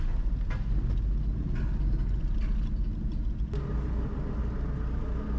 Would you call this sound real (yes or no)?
yes